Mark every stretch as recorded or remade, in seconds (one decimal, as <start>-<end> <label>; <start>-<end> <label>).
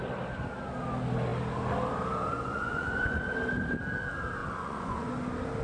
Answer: 0.0-2.3 recorded; 2.3-3.2 remade; 3.2-4.4 recorded; 4.4-5.1 remade; 5.1-5.6 recorded